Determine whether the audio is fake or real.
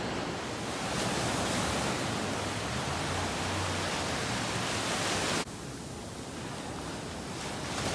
real